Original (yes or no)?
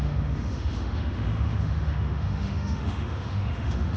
no